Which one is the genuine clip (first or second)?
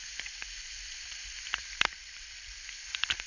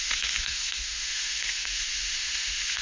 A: first